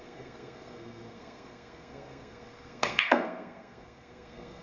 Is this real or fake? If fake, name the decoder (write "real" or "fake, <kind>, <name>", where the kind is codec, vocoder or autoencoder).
fake, codec, SNAC